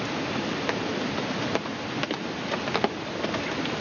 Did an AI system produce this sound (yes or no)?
yes